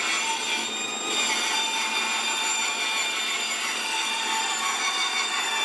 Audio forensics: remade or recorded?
recorded